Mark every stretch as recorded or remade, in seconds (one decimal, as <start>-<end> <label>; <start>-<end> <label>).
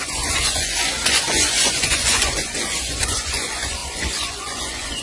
0.0-5.0 remade